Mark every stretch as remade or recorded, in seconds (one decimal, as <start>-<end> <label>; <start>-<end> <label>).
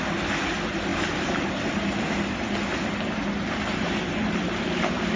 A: 0.0-5.2 recorded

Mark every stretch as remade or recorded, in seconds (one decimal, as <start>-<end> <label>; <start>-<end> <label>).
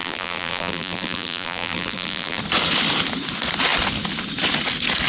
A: 0.0-2.4 remade; 2.4-5.1 recorded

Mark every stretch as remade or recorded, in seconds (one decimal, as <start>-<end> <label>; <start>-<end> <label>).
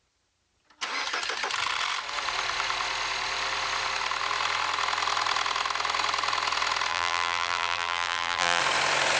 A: 0.0-6.9 recorded; 6.9-8.6 remade; 8.6-9.2 recorded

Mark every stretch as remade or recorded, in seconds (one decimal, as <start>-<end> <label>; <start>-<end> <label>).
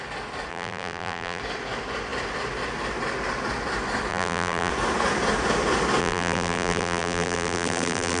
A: 0.0-0.5 recorded; 0.5-1.4 remade; 1.4-4.1 recorded; 4.1-4.7 remade; 4.7-6.0 recorded; 6.0-8.2 remade